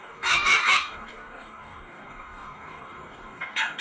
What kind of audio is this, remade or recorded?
remade